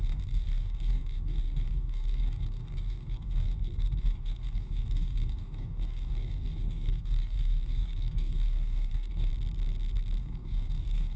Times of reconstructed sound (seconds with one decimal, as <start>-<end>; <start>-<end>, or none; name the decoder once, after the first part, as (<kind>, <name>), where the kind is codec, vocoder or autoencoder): 0.0-9.3 (codec, DAC); 10.2-11.2